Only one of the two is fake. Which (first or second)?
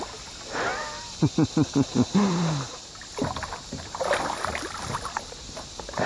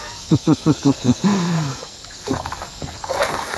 second